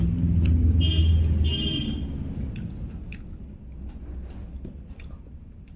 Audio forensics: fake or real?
real